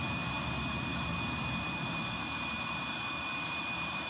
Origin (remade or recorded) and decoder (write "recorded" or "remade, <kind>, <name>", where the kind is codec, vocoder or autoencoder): remade, vocoder, BigVGAN v2